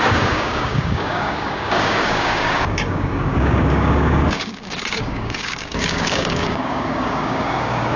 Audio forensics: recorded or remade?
remade